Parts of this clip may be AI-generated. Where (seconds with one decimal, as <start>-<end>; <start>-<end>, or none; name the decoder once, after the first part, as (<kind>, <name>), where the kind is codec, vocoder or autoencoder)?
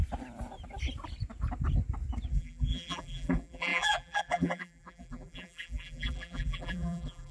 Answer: 2.3-7.3 (vocoder, BigVGAN v2)